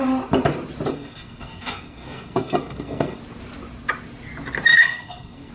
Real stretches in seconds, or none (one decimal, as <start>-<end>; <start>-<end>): 0.0-0.9; 3.2-4.7